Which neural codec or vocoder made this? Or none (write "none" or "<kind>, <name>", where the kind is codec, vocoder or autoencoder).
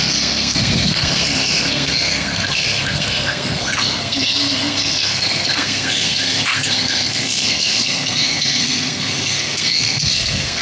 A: codec, SNAC